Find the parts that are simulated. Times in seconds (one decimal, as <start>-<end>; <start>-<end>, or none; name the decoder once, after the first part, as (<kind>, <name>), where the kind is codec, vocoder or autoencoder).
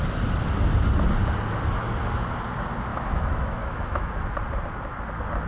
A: 2.9-4.1 (autoencoder, DAC-VAE)